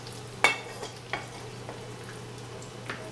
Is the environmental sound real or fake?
real